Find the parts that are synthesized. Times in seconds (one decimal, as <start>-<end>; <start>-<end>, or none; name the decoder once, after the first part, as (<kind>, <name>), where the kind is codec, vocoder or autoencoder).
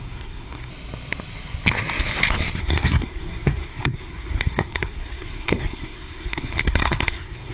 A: 0.0-0.7 (codec, SNAC); 2.6-7.5